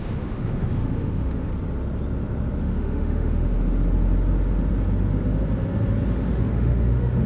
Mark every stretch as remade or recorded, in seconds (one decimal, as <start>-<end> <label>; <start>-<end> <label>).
0.0-1.5 remade; 1.5-2.6 recorded; 2.6-3.5 remade; 3.5-6.3 recorded; 6.3-7.3 remade